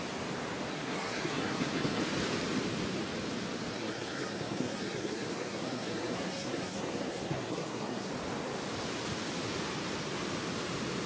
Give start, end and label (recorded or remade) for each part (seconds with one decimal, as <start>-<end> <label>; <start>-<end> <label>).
0.0-0.7 recorded; 0.7-2.0 remade; 2.0-3.7 recorded; 3.7-8.1 remade; 8.1-11.1 recorded